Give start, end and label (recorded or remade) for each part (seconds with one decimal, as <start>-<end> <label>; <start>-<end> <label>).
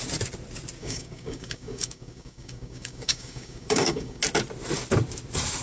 0.0-0.8 recorded; 0.8-4.2 remade; 4.2-5.6 recorded